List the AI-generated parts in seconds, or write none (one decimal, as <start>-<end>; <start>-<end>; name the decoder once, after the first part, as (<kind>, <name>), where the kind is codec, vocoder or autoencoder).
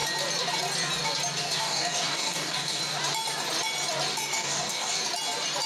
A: 1.4-2.8 (codec, DAC); 4.1-5.0